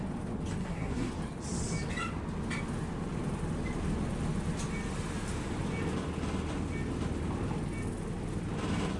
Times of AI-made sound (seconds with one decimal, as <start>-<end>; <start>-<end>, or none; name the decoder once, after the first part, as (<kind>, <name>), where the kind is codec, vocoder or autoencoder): 0.6-1.1 (codec, SNAC)